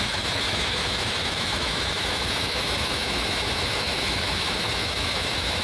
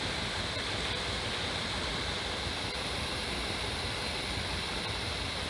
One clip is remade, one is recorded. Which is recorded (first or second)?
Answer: second